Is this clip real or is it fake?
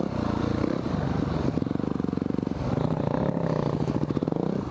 real